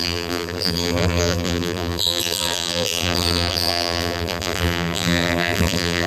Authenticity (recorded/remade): remade